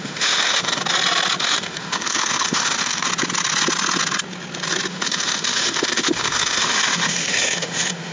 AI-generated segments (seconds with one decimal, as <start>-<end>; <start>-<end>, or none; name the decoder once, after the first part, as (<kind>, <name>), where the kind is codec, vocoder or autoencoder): 0.0-0.8 (autoencoder, DAC-VAE); 1.4-3.1; 4.9-8.1